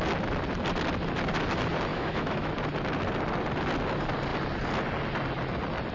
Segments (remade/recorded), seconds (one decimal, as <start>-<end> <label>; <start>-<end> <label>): 0.0-1.9 recorded; 1.9-2.5 remade; 2.5-5.9 recorded